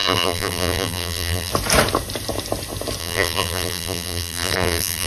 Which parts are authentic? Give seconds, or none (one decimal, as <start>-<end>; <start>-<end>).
1.5-3.0